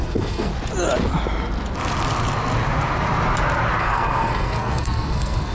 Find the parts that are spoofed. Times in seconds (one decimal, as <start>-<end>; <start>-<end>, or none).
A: 0.0-0.5; 3.8-5.5